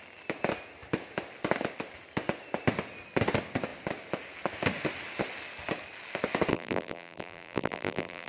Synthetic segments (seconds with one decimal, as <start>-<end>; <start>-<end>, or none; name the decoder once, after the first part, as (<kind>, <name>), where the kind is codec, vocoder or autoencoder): 6.5-8.3 (vocoder, BigVGAN v2)